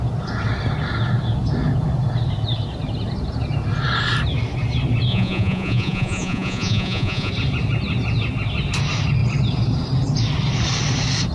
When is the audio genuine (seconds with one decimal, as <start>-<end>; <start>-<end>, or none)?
0.0-5.1; 7.3-11.3

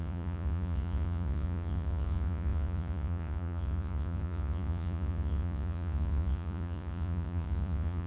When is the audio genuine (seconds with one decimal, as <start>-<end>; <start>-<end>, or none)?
none

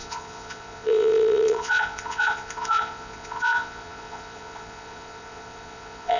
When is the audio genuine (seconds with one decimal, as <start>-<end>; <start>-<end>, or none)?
none

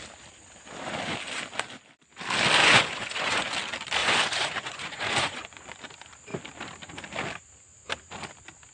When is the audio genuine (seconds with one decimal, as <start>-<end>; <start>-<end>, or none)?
0.0-2.6; 3.5-4.0; 5.8-8.7

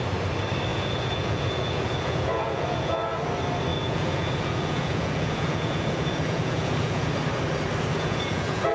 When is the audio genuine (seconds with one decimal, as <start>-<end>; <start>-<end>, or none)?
0.0-0.7; 3.2-3.7; 7.1-7.9

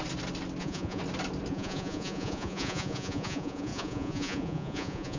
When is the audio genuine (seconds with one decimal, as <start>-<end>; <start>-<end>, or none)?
0.0-0.6; 1.0-1.5